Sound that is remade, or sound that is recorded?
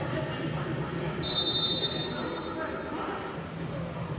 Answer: recorded